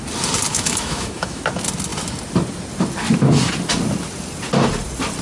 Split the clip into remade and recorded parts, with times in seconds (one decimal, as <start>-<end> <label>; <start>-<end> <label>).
0.0-0.5 recorded; 0.5-1.4 remade; 1.4-5.2 recorded